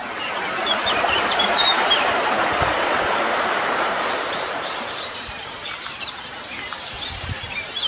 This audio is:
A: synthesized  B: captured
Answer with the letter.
A